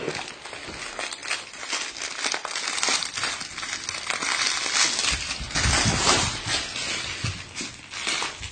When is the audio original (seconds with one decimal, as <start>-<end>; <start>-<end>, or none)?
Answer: 0.0-8.5